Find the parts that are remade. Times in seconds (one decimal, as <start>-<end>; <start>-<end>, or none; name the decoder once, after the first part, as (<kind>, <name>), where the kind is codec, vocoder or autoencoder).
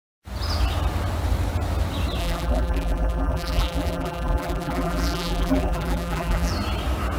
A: 2.2-6.5 (vocoder, BigVGAN v2)